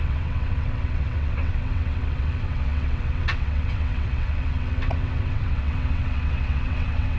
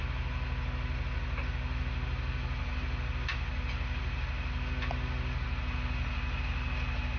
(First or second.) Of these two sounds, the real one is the second